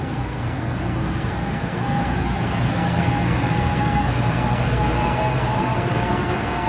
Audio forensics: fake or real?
fake